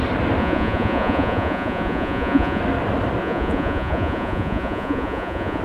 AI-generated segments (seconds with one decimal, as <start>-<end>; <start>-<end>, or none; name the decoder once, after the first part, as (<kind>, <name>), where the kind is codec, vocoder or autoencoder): 0.4-2.6 (vocoder, Vocos); 3.2-5.6